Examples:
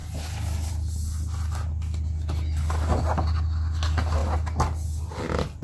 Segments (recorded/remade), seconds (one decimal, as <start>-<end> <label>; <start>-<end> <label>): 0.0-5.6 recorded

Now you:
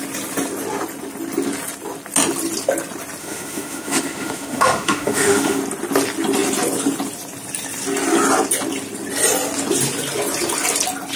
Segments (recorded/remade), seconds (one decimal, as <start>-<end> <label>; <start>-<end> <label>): 0.0-3.2 recorded; 3.2-5.6 remade; 5.6-11.2 recorded

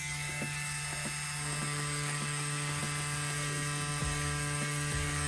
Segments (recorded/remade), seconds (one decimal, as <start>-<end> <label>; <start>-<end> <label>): 0.0-0.8 remade; 0.8-1.6 recorded; 1.6-2.8 remade; 2.8-4.0 recorded; 4.0-5.3 remade

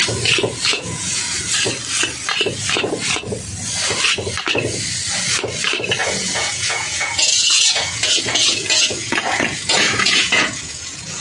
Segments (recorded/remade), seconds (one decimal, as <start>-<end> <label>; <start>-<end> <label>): 0.0-0.7 recorded; 0.7-1.4 remade; 1.4-6.0 recorded; 6.0-11.2 remade

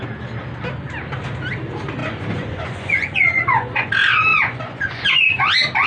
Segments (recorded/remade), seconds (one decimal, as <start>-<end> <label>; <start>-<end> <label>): 0.0-2.0 recorded; 2.0-3.9 remade; 3.9-4.3 recorded; 4.3-5.4 remade; 5.4-5.9 recorded

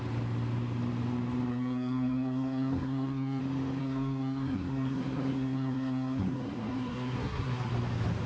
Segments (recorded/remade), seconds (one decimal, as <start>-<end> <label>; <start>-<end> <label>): 0.0-1.5 recorded; 1.5-3.4 remade; 3.4-3.8 recorded; 3.8-7.7 remade; 7.7-8.3 recorded